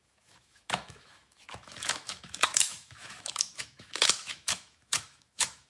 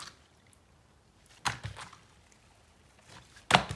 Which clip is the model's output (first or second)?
first